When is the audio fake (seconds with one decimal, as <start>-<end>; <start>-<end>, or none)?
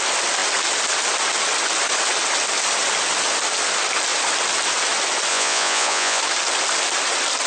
5.3-6.2